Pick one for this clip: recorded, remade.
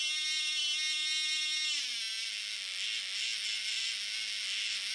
recorded